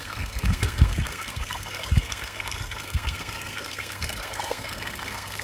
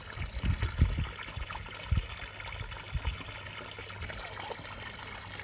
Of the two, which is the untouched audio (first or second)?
second